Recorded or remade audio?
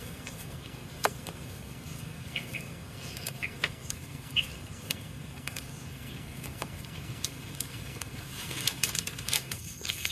remade